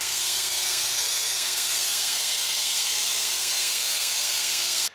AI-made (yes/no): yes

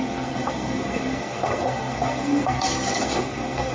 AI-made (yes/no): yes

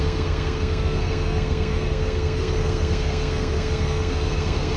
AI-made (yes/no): yes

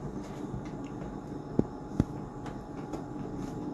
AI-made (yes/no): no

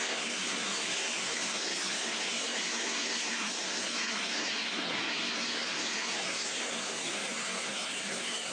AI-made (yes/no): yes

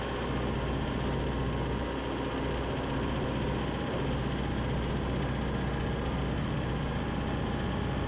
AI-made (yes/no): no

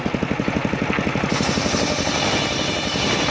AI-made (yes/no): no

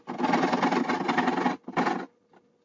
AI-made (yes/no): no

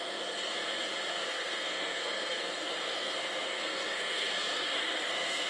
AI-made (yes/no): yes